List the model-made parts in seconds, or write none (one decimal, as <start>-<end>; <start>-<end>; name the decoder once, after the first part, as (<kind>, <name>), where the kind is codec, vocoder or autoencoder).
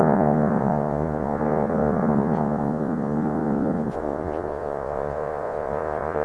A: 0.0-6.2 (vocoder, Vocos)